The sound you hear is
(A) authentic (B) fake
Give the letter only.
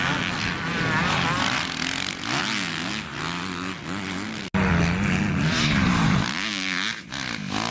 A